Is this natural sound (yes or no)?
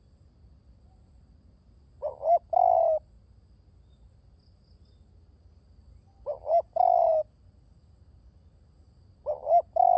yes